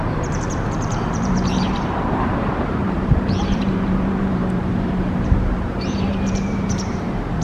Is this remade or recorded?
remade